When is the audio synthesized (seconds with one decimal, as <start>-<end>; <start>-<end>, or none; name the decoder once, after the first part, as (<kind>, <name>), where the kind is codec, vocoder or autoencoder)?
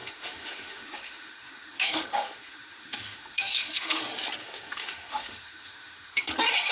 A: 0.0-4.0 (autoencoder, DAC-VAE); 4.4-6.3